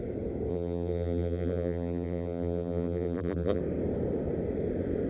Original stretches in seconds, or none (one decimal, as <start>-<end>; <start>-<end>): 0.0-0.5; 3.6-5.1